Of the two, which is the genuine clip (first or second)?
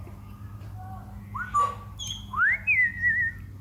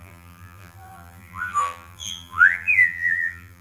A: first